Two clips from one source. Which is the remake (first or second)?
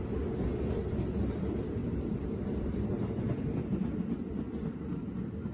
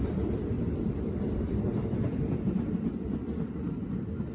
second